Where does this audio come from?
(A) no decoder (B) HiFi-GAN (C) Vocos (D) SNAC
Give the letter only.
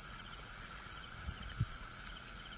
C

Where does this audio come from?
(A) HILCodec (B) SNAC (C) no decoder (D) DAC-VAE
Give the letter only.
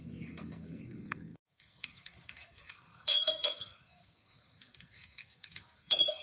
B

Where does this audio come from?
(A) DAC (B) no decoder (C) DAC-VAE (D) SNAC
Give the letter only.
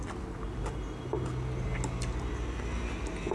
B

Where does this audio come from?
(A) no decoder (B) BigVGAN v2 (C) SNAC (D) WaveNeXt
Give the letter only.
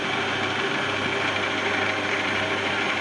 A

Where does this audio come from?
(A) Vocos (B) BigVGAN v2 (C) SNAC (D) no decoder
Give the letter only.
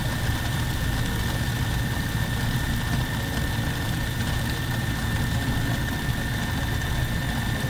D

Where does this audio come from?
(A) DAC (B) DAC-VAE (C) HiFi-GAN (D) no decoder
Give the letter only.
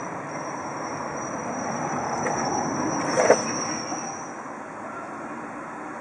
D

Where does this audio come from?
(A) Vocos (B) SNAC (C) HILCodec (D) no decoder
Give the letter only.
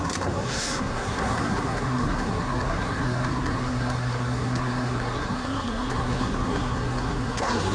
B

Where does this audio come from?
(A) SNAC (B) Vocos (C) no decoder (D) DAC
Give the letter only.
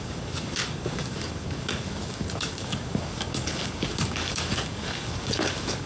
D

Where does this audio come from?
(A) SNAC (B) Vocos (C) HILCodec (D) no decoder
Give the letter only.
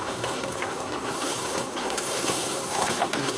A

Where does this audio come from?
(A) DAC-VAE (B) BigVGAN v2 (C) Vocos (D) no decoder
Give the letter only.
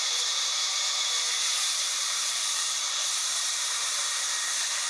B